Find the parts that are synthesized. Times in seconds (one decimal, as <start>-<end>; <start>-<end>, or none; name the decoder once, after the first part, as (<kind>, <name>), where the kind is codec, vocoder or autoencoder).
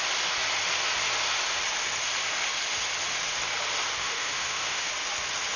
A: 4.0-4.9 (autoencoder, DAC-VAE)